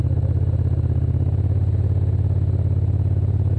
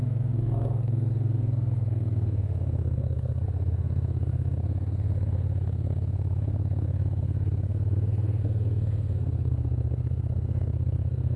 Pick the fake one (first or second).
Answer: second